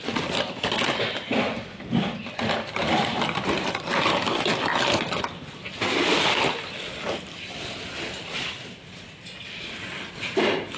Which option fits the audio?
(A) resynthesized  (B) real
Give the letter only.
B